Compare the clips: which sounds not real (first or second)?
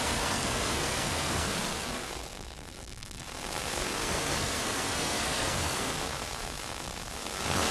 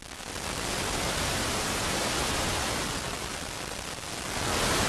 first